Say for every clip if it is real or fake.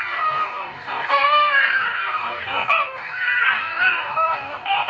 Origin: fake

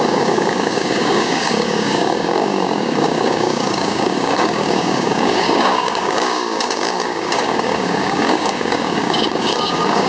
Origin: fake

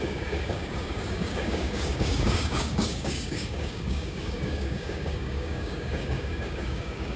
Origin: fake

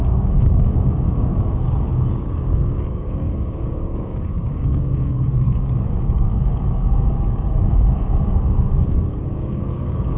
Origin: fake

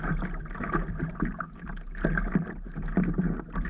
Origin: real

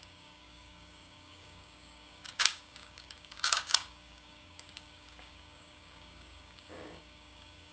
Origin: fake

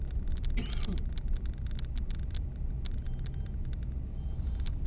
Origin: real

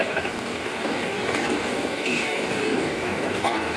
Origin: fake